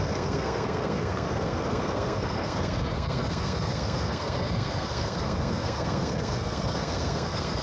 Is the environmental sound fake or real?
fake